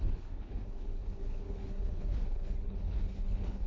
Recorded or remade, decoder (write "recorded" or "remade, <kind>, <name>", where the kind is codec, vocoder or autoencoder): remade, codec, HILCodec